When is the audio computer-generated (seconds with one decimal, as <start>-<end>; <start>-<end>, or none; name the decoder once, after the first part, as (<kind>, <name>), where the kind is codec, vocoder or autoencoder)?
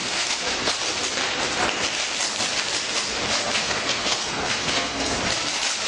0.0-0.7 (codec, SNAC); 3.6-5.2